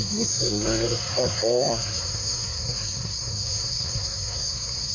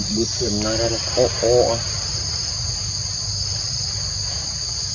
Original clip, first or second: second